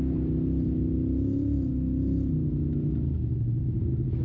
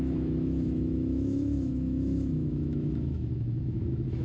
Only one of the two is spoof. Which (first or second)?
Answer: second